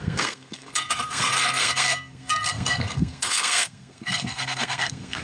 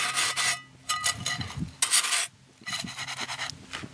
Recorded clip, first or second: second